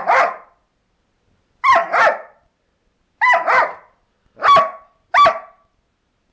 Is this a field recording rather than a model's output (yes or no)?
yes